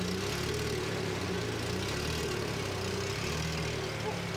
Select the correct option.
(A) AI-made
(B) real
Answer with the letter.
B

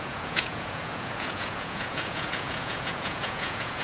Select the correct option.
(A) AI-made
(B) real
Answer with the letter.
A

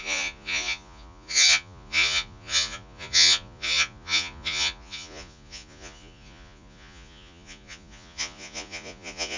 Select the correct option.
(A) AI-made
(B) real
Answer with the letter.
A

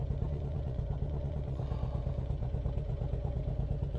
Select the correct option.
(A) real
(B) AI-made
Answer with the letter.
B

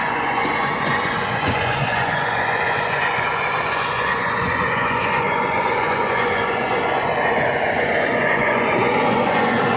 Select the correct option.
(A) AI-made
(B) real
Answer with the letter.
A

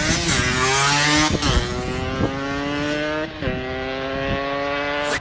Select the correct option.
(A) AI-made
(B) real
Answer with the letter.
B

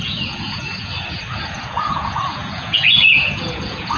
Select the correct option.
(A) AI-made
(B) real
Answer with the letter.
A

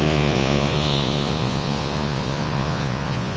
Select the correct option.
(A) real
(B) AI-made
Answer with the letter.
B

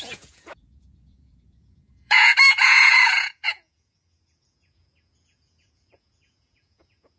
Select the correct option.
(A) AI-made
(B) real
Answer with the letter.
A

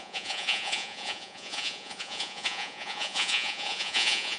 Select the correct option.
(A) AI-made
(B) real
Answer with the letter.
A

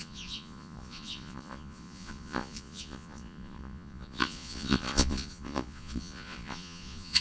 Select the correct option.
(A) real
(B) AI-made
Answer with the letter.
B